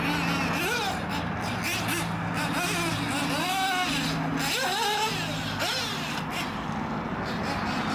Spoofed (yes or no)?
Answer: no